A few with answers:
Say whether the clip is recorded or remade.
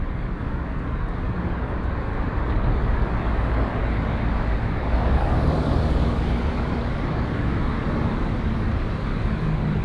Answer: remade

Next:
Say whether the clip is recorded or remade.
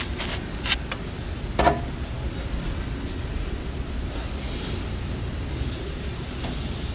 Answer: recorded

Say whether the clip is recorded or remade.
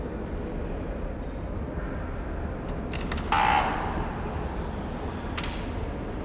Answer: recorded